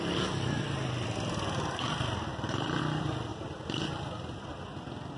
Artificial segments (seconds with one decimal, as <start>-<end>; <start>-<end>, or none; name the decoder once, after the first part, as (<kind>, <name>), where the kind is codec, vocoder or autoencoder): 2.3-2.8 (vocoder, BigVGAN v2)